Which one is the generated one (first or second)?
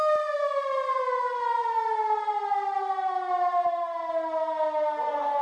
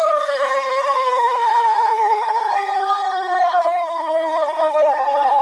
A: second